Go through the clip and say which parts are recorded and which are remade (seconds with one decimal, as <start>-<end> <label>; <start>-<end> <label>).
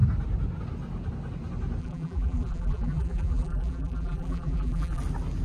0.0-1.8 recorded; 1.8-5.0 remade; 5.0-5.4 recorded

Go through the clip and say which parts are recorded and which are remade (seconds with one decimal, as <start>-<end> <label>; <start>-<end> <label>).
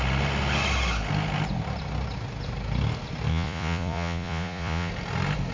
0.0-3.3 recorded; 3.3-4.9 remade; 4.9-5.5 recorded